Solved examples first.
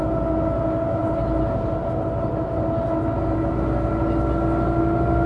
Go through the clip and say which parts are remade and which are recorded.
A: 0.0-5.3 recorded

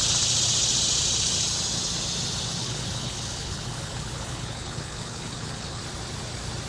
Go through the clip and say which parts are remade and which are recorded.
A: 0.0-2.6 recorded; 2.6-5.8 remade; 5.8-6.7 recorded

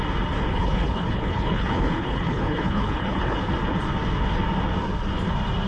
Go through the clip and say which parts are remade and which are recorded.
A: 0.0-0.5 recorded; 0.5-3.5 remade; 3.5-5.7 recorded

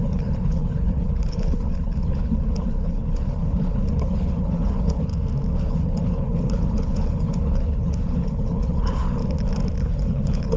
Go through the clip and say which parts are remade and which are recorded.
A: 0.0-5.1 remade; 5.1-5.7 recorded; 5.7-9.2 remade; 9.2-9.8 recorded; 9.8-10.6 remade

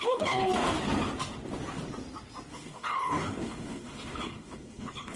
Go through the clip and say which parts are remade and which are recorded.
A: 0.0-0.5 remade; 0.5-2.5 recorded; 2.5-5.2 remade